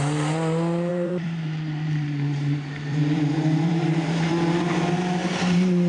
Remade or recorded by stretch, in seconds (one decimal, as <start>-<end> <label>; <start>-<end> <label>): 0.0-0.9 recorded; 0.9-4.3 remade; 4.3-5.2 recorded; 5.2-5.9 remade